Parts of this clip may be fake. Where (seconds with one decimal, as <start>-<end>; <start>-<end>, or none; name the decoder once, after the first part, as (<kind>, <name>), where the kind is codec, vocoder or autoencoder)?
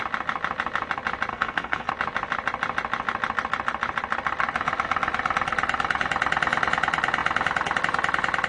1.3-1.9 (codec, SNAC)